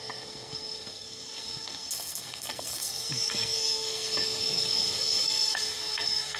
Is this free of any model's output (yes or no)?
no